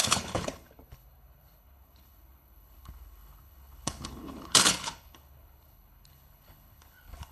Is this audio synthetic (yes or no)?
yes